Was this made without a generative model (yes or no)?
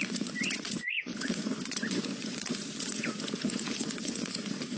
no